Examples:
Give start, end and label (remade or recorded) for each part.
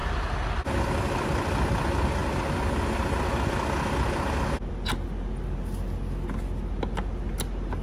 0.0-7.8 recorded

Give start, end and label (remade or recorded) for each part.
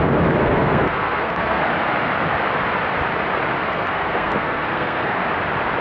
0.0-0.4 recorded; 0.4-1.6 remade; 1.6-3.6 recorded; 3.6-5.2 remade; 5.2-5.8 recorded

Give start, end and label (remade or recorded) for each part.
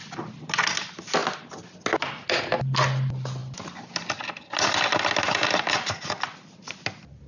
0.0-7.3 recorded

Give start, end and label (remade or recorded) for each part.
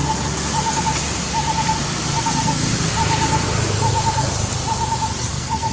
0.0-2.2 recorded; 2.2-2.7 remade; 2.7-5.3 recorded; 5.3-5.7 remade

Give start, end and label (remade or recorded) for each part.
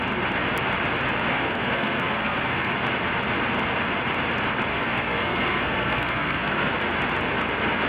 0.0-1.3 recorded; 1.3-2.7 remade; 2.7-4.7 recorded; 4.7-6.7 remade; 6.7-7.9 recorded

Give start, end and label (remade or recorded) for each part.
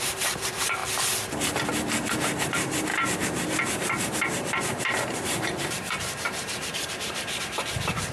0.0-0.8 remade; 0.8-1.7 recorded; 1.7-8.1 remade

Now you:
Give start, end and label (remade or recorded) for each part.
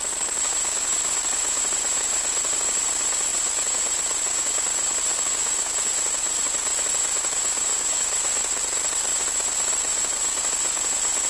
0.0-11.3 recorded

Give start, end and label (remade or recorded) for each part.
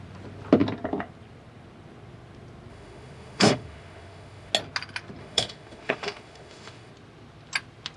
0.0-2.7 recorded; 2.7-4.5 remade; 4.5-5.2 recorded; 5.2-6.9 remade; 6.9-8.0 recorded